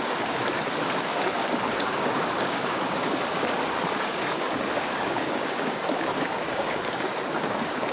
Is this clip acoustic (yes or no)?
no